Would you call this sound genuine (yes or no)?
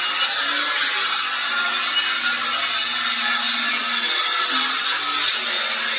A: yes